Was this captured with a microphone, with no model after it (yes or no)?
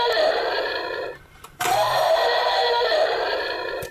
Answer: no